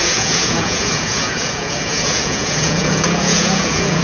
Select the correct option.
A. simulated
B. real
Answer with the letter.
A